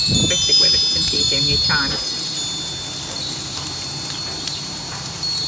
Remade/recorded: recorded